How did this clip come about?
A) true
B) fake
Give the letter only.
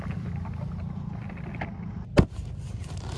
A